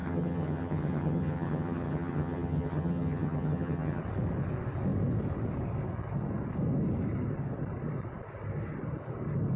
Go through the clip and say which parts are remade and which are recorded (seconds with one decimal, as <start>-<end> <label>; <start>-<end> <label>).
0.0-4.0 remade; 4.0-9.6 recorded